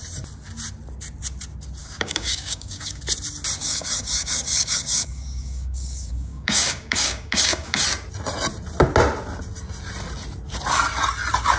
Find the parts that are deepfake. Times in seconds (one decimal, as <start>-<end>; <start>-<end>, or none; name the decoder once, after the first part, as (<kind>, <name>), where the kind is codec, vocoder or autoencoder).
1.8-3.0 (codec, DAC); 3.6-7.8